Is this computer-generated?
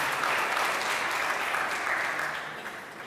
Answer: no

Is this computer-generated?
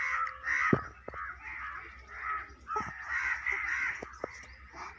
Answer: no